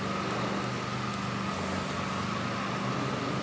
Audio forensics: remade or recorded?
recorded